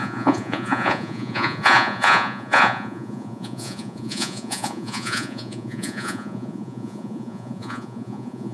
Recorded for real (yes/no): no